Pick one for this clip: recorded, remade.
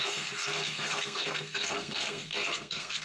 remade